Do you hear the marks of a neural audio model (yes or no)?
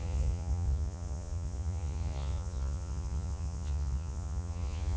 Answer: yes